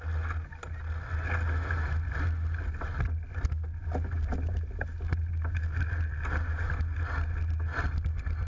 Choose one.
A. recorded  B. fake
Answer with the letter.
A